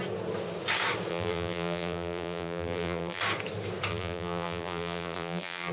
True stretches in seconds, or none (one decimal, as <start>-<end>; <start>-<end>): 0.0-1.1; 3.2-3.9